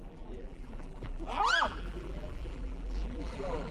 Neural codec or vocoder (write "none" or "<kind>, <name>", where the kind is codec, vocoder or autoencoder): vocoder, BigVGAN v2